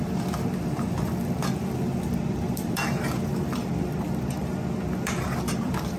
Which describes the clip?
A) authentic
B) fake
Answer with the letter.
B